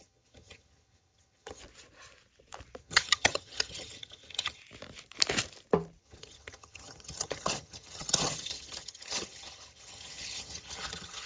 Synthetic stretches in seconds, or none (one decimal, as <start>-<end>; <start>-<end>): 0.0-1.6; 2.8-4.6; 6.0-11.3